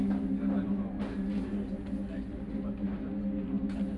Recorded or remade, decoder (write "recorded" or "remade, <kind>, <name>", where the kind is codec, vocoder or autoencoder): recorded